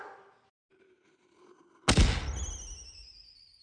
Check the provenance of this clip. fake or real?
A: real